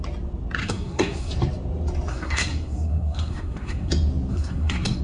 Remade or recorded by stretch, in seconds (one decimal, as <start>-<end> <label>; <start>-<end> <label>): 0.0-0.6 recorded; 0.6-1.3 remade; 1.3-2.1 recorded; 2.1-3.9 remade; 3.9-4.3 recorded; 4.3-5.0 remade